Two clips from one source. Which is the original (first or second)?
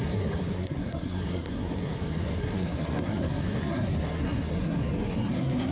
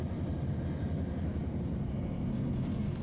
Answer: second